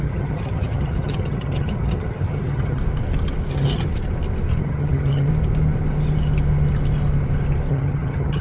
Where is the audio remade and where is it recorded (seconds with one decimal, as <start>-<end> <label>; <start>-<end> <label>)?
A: 0.0-2.8 remade; 2.8-3.5 recorded; 3.5-3.9 remade; 3.9-4.6 recorded; 4.6-5.3 remade; 5.3-7.7 recorded; 7.7-8.4 remade